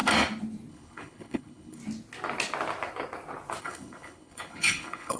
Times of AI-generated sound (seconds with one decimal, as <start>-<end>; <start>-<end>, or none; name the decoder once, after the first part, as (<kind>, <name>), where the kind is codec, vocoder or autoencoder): 0.7-1.8 (codec, HILCodec); 3.6-5.2